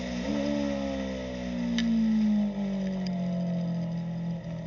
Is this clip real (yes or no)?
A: yes